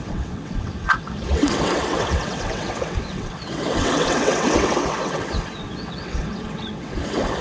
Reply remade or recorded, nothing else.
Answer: remade